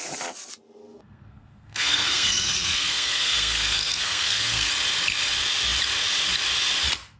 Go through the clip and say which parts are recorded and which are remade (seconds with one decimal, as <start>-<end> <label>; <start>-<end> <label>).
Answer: 0.0-0.8 recorded; 0.8-4.7 remade; 4.7-7.2 recorded